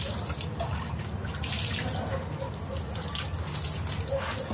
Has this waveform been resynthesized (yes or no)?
no